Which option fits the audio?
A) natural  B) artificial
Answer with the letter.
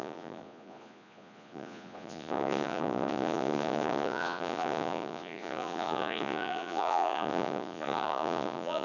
B